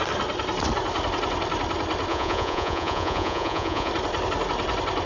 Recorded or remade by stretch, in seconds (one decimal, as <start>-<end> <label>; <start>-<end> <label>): 0.0-2.1 recorded; 2.1-3.9 remade; 3.9-5.1 recorded